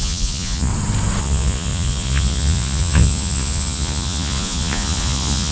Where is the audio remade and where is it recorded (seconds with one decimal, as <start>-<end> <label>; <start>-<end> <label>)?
0.0-0.7 remade; 0.7-1.2 recorded; 1.2-5.5 remade